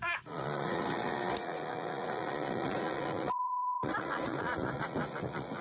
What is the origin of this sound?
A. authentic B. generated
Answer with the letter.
B